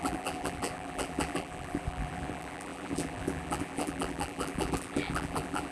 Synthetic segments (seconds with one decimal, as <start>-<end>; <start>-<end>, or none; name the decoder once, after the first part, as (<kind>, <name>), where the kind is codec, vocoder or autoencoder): 0.0-5.7 (vocoder, BigVGAN v2)